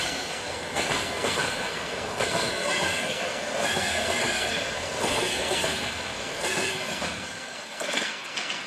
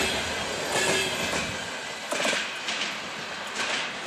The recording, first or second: second